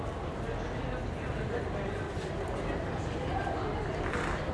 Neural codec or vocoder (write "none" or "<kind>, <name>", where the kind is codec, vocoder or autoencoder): none